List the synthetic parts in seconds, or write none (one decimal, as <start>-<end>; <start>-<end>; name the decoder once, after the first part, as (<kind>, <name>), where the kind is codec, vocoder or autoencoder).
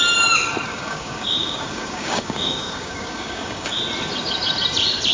0.7-3.8 (codec, DAC)